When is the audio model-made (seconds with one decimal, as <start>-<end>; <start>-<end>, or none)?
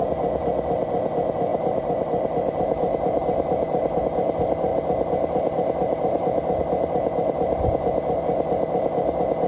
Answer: 1.5-4.0; 4.7-8.2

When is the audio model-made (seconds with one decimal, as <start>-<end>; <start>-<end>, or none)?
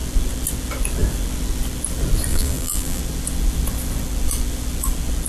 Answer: 2.3-3.0